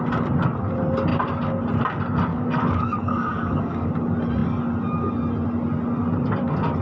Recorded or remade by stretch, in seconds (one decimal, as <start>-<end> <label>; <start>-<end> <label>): 0.0-2.3 recorded; 2.3-3.9 remade; 3.9-6.8 recorded